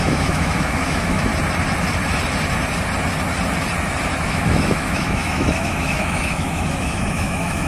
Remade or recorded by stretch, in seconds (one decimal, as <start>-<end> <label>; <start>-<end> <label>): 0.0-1.3 remade; 1.3-4.3 recorded; 4.3-7.7 remade